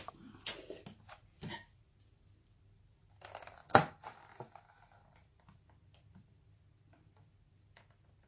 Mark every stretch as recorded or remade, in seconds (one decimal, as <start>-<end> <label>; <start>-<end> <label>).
0.0-3.6 recorded; 3.6-7.3 remade; 7.3-8.3 recorded